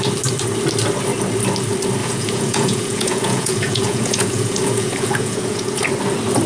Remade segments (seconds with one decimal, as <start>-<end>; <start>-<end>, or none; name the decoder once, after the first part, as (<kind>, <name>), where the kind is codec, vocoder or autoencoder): 2.0-5.9 (vocoder, Vocos)